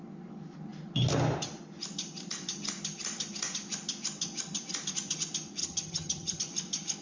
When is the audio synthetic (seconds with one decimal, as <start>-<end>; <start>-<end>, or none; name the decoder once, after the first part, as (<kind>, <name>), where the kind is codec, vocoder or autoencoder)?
5.6-6.4 (vocoder, HiFi-GAN)